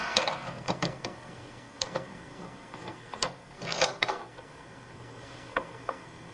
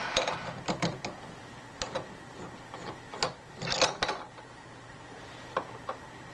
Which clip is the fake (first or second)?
first